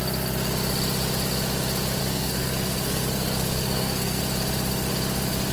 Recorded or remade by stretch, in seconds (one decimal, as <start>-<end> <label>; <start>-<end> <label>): 0.0-2.0 recorded; 2.0-4.2 remade; 4.2-5.5 recorded